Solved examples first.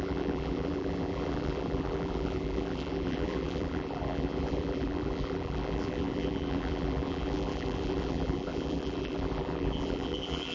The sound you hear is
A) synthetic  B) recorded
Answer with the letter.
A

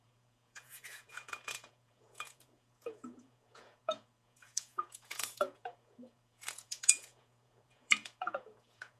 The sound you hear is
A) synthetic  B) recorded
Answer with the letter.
A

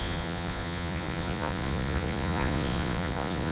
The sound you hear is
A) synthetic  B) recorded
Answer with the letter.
A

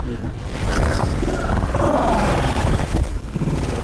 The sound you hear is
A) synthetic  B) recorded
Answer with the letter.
A